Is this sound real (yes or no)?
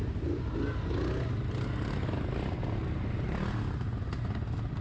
yes